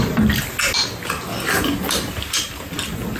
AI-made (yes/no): no